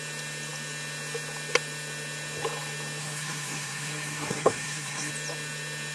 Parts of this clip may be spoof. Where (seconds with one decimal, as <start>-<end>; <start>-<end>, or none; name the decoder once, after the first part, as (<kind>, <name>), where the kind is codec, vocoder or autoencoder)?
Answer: 3.0-5.1 (codec, SNAC)